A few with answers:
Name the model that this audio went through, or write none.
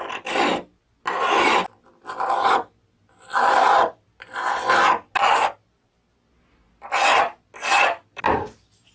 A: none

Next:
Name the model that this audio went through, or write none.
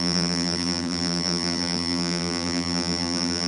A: vocoder, BigVGAN v2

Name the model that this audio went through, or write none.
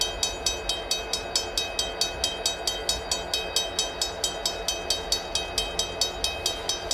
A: none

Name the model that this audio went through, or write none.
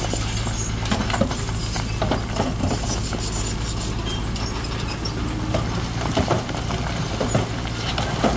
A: none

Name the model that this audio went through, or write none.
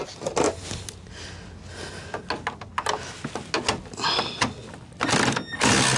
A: none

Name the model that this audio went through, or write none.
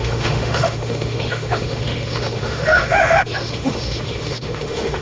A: autoencoder, DAC-VAE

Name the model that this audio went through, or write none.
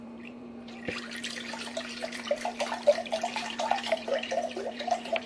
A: vocoder, BigVGAN v2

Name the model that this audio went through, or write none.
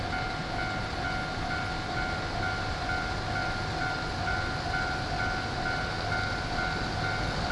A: none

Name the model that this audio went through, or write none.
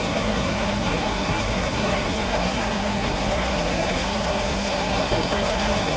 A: codec, SNAC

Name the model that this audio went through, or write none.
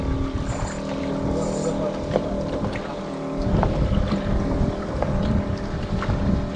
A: none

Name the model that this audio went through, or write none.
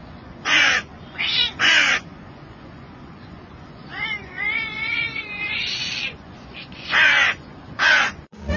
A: vocoder, Vocos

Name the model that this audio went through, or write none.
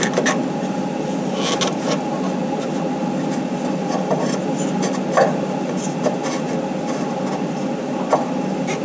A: none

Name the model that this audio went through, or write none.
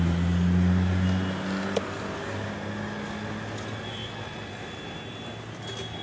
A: none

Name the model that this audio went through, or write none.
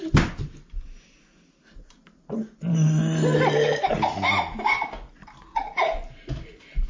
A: none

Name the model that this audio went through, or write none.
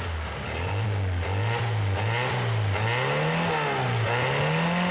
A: none